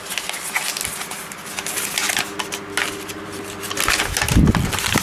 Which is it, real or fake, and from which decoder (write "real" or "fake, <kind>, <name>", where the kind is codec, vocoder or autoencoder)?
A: real